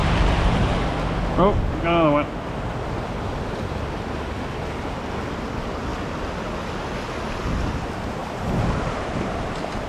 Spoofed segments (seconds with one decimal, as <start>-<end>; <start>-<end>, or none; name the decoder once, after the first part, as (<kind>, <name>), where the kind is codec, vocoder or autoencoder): 0.0-0.7 (vocoder, BigVGAN v2); 8.2-9.5